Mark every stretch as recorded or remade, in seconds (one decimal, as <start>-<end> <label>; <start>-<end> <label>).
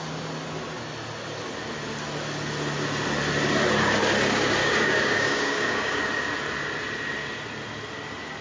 0.0-4.6 recorded; 4.6-6.0 remade; 6.0-8.4 recorded